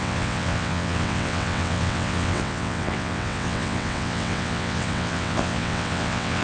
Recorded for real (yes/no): no